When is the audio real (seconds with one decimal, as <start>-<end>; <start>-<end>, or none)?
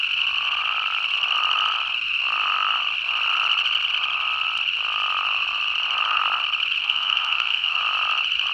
0.0-6.8; 7.8-8.5